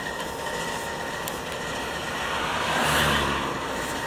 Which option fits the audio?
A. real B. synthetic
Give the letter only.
A